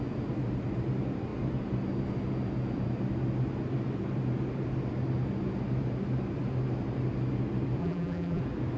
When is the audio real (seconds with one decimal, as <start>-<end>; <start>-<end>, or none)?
0.0-7.8; 8.4-8.8